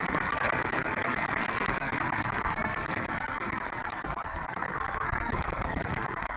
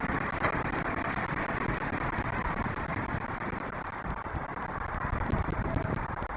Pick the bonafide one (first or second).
second